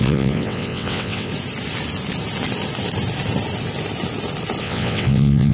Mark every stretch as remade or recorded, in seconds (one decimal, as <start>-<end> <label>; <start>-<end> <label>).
0.0-1.3 remade; 1.3-4.6 recorded; 4.6-5.5 remade